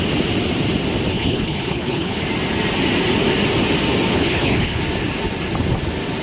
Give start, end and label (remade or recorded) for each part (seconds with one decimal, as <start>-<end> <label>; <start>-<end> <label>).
0.0-1.1 recorded; 1.1-2.2 remade; 2.2-4.1 recorded; 4.1-4.8 remade; 4.8-6.2 recorded

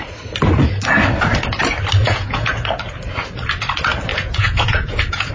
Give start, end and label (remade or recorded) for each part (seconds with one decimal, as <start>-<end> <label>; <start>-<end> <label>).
0.0-2.0 recorded; 2.0-2.5 remade; 2.5-4.1 recorded; 4.1-5.3 remade

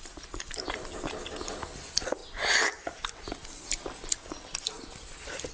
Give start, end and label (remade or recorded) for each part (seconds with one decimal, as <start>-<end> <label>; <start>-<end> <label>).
0.0-5.5 recorded

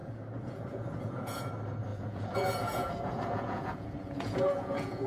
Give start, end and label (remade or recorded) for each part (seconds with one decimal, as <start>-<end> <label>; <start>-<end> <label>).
0.0-1.5 remade; 1.5-1.9 recorded; 1.9-5.1 remade

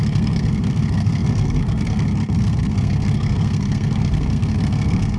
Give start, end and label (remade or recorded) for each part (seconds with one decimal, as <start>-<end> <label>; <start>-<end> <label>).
0.0-5.2 remade